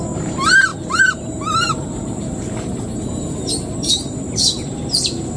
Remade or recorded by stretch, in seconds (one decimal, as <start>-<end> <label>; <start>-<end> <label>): 0.0-5.4 remade